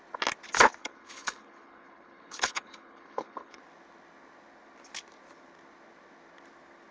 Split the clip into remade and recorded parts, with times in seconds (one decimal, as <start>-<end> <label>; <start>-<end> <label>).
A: 0.0-0.8 recorded; 0.8-3.6 remade; 3.6-6.9 recorded